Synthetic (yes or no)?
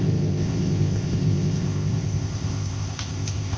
yes